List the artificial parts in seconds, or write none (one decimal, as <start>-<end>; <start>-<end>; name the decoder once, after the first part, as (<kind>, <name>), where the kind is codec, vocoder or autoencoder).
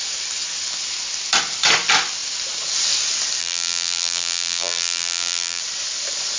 3.4-5.6 (vocoder, BigVGAN v2)